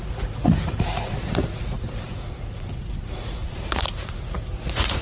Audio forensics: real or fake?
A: fake